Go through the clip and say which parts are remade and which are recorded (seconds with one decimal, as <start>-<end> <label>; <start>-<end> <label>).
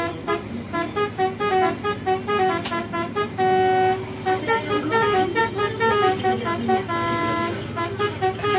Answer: 0.0-8.6 recorded